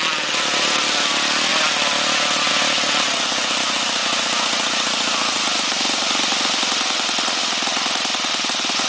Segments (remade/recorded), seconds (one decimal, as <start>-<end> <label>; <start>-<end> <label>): 0.0-8.9 recorded